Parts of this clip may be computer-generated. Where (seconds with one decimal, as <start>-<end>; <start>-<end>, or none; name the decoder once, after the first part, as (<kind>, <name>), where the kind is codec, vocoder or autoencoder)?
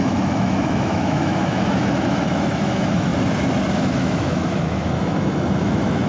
0.0-3.1 (autoencoder, DAC-VAE); 3.7-6.1